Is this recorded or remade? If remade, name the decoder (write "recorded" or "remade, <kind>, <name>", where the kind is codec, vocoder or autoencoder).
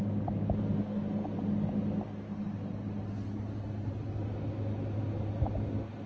recorded